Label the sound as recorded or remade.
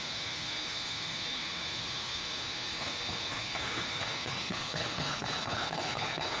remade